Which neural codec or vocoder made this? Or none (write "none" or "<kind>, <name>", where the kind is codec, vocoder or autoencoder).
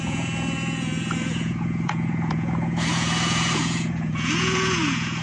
vocoder, Vocos